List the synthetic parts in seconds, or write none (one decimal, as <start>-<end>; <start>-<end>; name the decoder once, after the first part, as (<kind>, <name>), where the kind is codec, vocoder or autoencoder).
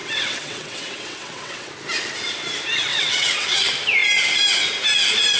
0.0-1.7 (vocoder, WaveNeXt); 2.9-3.6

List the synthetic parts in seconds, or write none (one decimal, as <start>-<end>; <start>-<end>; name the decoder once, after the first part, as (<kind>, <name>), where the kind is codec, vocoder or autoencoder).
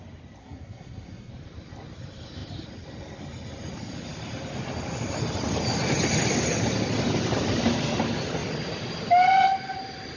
0.4-1.3 (codec, SNAC)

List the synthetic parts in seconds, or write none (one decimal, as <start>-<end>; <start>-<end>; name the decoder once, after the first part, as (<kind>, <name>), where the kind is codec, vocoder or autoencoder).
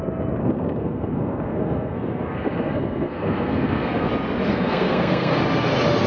0.4-4.1 (codec, SNAC); 4.5-5.4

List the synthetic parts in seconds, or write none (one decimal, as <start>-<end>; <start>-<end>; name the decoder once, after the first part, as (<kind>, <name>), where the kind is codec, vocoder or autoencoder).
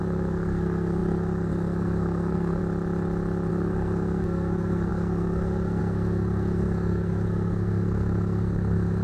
0.0-2.6 (codec, SNAC); 3.5-9.0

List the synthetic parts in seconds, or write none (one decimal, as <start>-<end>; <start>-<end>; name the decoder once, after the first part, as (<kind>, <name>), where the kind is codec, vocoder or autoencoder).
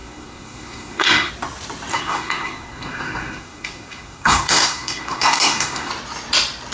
0.0-1.3 (codec, SNAC); 1.9-5.9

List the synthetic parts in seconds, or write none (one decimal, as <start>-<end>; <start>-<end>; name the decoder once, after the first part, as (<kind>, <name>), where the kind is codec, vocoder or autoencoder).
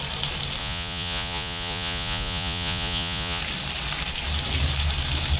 0.6-3.4 (vocoder, Vocos)